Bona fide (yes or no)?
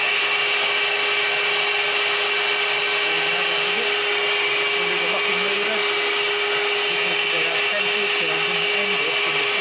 yes